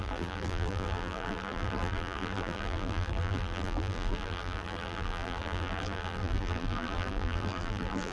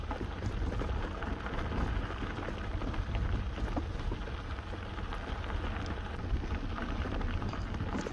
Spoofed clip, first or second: first